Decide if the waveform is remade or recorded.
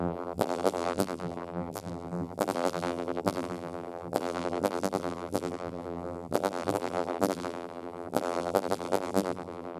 remade